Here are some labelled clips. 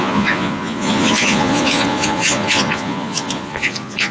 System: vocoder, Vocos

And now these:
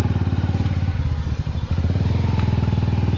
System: none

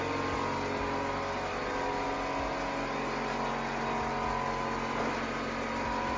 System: none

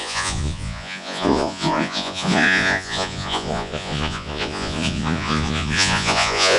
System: vocoder, Vocos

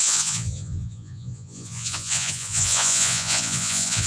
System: vocoder, Vocos